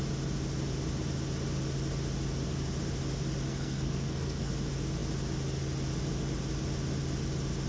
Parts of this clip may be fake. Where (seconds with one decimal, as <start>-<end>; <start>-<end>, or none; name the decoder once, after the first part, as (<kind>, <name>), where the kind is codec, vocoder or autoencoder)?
3.5-4.5 (codec, SNAC)